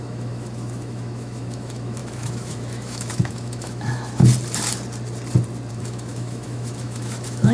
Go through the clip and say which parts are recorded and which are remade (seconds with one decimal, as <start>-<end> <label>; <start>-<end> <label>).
0.0-4.2 remade; 4.2-5.7 recorded; 5.7-7.5 remade